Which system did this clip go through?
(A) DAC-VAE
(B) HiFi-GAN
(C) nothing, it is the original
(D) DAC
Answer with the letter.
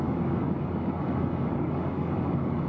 D